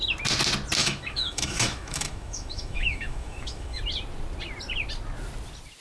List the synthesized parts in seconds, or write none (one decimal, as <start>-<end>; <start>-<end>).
0.8-3.8